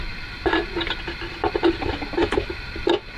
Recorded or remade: recorded